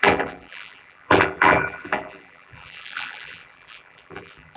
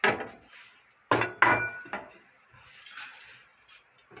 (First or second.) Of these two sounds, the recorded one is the second